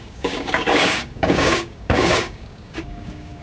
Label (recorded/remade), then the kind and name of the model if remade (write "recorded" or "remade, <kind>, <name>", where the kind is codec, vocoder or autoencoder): remade, codec, DAC